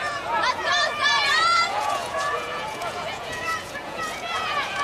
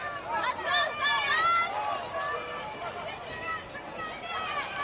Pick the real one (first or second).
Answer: second